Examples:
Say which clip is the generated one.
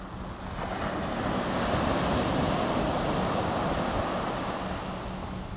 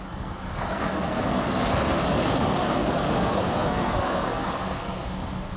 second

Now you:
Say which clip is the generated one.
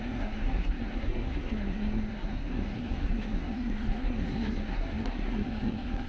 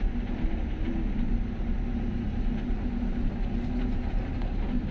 first